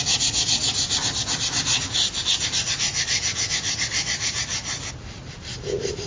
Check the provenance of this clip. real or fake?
real